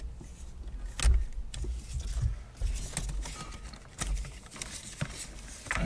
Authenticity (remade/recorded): recorded